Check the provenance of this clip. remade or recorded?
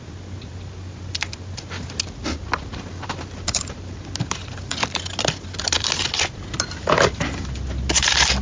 recorded